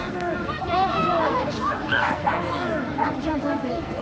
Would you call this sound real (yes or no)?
no